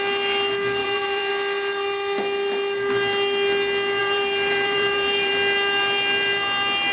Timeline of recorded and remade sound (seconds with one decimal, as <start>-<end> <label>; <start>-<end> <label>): 0.0-0.8 recorded; 0.8-1.3 remade; 1.3-4.0 recorded; 4.0-5.3 remade; 5.3-6.9 recorded